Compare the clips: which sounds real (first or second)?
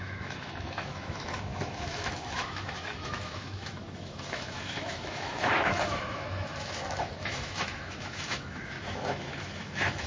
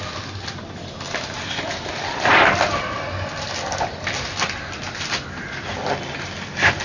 second